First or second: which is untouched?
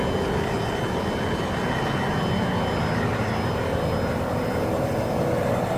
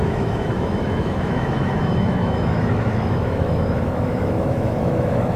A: first